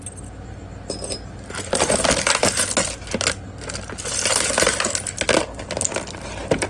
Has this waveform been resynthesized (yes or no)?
no